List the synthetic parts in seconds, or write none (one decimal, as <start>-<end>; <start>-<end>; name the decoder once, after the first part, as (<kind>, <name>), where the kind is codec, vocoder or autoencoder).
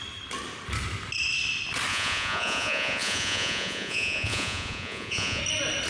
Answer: 1.9-5.4 (vocoder, Vocos)